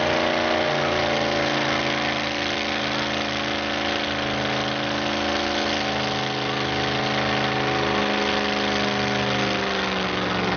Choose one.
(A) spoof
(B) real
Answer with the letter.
B